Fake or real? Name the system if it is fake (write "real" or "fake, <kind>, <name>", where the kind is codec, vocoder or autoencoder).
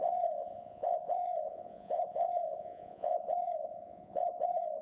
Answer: fake, vocoder, Vocos